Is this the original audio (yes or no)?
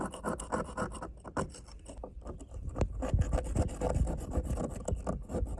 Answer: yes